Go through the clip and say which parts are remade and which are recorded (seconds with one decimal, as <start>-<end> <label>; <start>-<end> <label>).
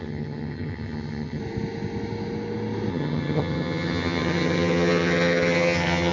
0.0-1.4 remade; 1.4-2.9 recorded; 2.9-6.1 remade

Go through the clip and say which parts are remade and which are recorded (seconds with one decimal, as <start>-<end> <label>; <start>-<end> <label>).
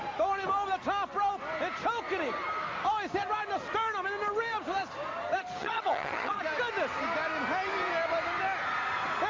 0.0-5.6 recorded; 5.6-6.4 remade; 6.4-9.3 recorded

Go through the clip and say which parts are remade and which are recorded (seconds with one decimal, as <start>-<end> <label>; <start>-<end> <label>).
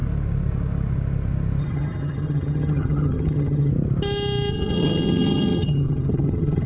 0.0-1.6 recorded; 1.6-3.7 remade; 3.7-4.5 recorded; 4.5-6.7 remade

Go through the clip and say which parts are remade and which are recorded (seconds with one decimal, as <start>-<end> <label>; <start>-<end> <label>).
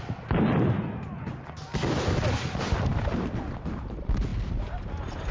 0.0-5.3 recorded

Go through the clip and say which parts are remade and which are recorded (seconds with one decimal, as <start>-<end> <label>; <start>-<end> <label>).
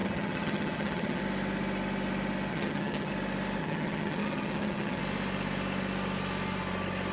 0.0-1.2 remade; 1.2-2.5 recorded; 2.5-3.1 remade; 3.1-3.6 recorded; 3.6-5.0 remade; 5.0-7.1 recorded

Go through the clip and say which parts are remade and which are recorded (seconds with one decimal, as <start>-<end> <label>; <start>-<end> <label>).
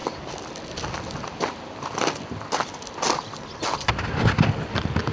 0.0-5.1 recorded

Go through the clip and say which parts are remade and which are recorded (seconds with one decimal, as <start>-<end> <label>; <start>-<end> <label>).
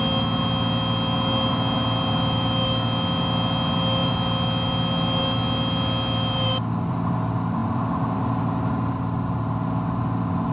0.0-10.5 recorded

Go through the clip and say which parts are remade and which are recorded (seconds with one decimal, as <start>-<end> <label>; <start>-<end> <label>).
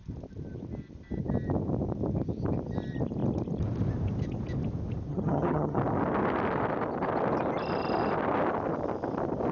0.0-5.1 recorded; 5.1-5.8 remade; 5.8-9.5 recorded